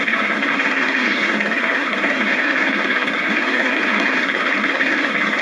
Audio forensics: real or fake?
fake